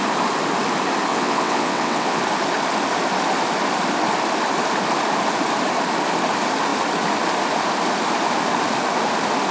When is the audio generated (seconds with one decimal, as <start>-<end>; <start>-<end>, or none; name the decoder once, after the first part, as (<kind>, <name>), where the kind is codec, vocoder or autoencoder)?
1.1-2.2 (vocoder, WaveNeXt)